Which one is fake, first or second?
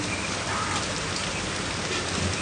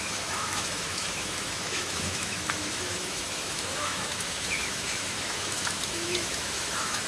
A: second